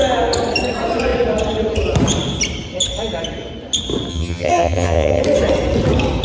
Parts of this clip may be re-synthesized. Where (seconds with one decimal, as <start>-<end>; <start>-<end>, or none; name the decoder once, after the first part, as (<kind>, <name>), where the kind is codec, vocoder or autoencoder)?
4.1-5.2 (vocoder, HiFi-GAN)